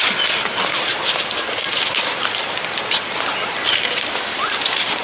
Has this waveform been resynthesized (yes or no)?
no